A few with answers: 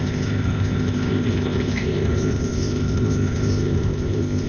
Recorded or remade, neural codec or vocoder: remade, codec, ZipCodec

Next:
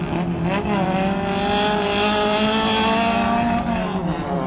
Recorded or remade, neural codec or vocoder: recorded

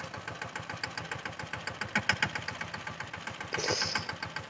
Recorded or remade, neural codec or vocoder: recorded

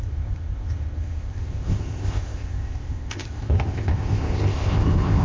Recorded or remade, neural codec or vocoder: remade, codec, ZipCodec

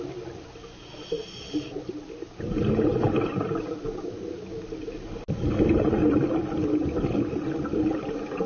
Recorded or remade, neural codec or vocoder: recorded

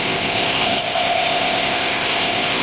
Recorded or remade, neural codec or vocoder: remade, codec, ZipCodec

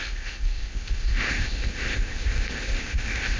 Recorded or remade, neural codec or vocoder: remade, codec, ZipCodec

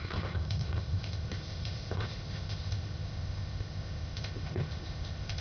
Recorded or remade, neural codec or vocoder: remade, codec, ZipCodec